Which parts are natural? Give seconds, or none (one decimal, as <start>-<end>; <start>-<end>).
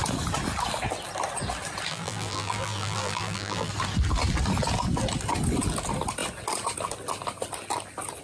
0.0-1.9; 3.7-8.2